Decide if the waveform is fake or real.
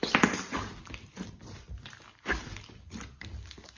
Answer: real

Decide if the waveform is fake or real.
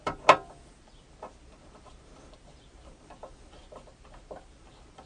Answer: real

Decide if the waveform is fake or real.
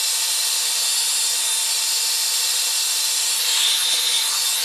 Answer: real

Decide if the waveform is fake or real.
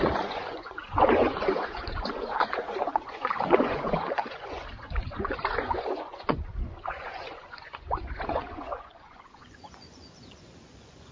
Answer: fake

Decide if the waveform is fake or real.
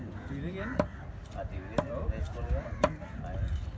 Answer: real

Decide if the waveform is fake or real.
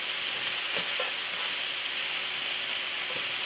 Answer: real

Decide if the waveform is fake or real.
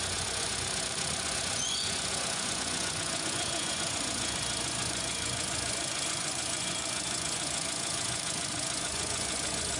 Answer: fake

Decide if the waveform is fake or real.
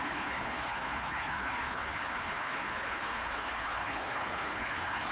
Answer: fake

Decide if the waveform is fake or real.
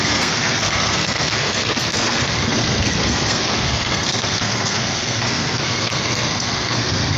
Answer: fake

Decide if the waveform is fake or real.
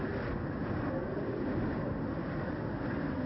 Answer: real